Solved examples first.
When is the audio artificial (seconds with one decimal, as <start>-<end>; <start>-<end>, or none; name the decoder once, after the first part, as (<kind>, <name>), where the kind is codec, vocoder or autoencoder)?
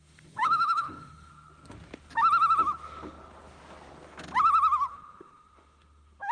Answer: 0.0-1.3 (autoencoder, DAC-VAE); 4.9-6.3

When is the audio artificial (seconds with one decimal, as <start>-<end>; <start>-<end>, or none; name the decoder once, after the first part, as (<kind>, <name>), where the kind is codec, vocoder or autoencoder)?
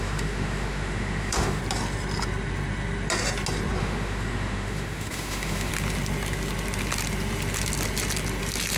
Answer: 0.0-1.6 (autoencoder, DAC-VAE); 3.8-5.7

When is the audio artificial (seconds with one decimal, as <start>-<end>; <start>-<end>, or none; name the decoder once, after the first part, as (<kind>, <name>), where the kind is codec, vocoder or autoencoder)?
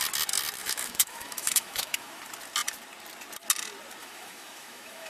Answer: 0.6-2.2 (autoencoder, DAC-VAE); 4.0-5.1